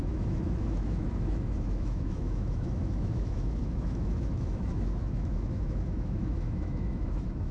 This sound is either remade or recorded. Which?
remade